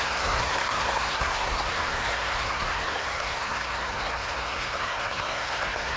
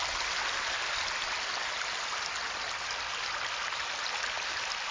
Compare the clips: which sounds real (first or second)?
second